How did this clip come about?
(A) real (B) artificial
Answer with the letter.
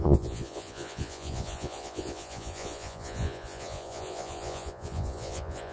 B